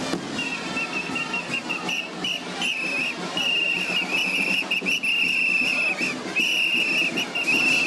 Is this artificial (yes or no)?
no